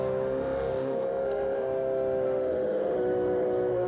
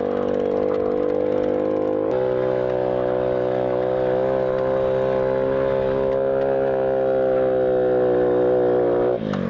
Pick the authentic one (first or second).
second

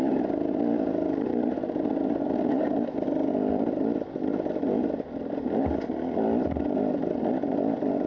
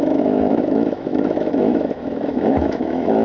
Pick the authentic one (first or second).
first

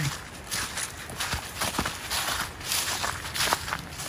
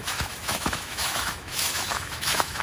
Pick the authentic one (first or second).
first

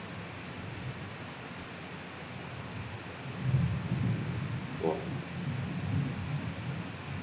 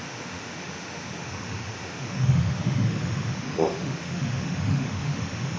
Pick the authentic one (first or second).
first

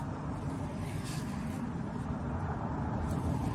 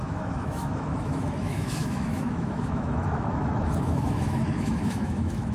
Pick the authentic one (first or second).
first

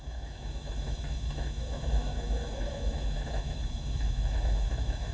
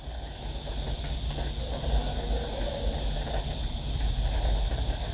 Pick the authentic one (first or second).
second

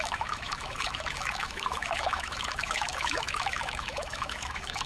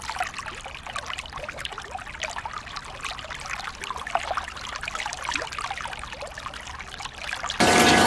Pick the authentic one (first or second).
second